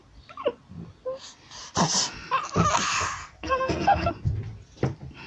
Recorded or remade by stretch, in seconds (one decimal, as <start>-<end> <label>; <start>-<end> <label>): 0.0-3.2 recorded; 3.2-4.1 remade; 4.1-5.3 recorded